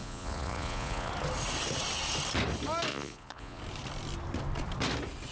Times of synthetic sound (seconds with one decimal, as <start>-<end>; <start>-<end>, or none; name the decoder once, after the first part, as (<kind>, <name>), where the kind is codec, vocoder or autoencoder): 0.0-1.1 (vocoder, Vocos); 2.9-3.6